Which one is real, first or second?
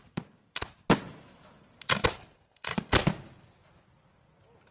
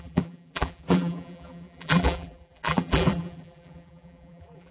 first